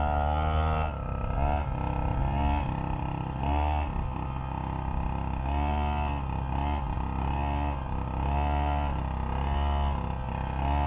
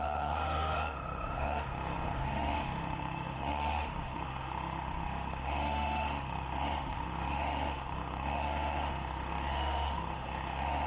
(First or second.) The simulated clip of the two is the second